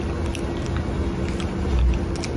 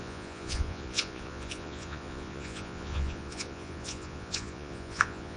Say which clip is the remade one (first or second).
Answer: second